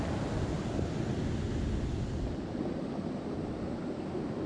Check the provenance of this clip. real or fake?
real